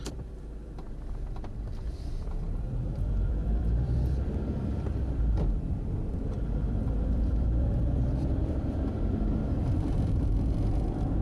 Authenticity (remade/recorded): remade